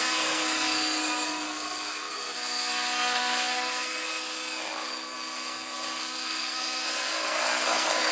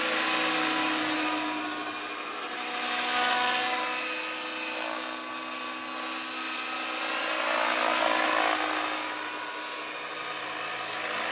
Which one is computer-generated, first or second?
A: first